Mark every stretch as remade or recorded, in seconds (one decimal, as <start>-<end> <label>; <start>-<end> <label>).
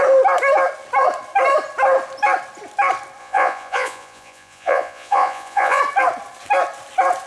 0.0-3.2 recorded; 3.2-5.8 remade; 5.8-7.3 recorded